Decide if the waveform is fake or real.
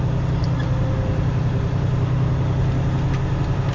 real